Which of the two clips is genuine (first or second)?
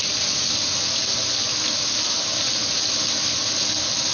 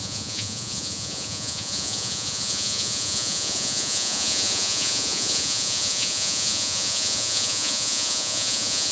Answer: first